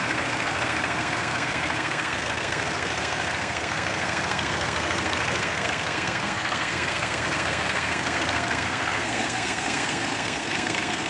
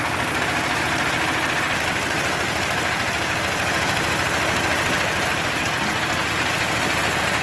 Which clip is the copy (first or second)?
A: first